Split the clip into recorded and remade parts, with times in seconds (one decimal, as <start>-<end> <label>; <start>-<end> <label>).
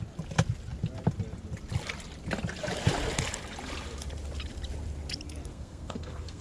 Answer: 0.0-5.5 recorded; 5.5-6.4 remade